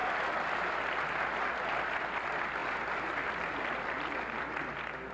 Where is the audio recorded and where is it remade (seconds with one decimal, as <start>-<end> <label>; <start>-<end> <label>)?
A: 0.0-5.1 recorded